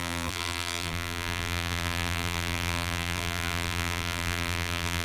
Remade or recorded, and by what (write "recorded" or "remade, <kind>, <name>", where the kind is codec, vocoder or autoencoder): remade, vocoder, BigVGAN v2